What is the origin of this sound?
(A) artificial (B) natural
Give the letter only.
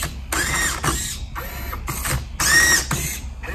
B